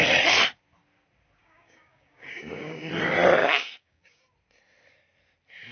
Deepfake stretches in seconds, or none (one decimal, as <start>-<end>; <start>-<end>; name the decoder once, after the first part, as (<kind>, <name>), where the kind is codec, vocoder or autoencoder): 1.4-2.9 (codec, DAC); 3.4-4.2